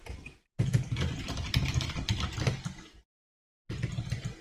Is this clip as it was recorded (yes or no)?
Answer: yes